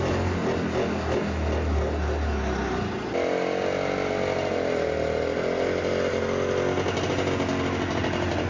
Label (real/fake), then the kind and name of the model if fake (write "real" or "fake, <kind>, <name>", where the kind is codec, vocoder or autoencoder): real